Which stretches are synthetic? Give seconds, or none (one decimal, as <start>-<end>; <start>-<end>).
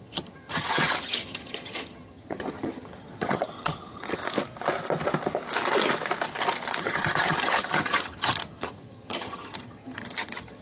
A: 0.0-4.2; 6.8-10.6